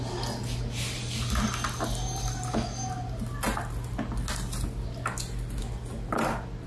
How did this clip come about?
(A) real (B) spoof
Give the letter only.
A